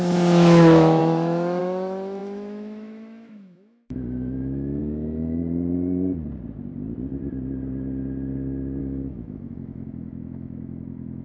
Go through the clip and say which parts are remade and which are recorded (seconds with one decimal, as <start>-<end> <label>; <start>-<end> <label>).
0.0-5.4 remade; 5.4-8.8 recorded; 8.8-11.2 remade